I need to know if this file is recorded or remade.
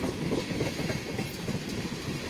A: recorded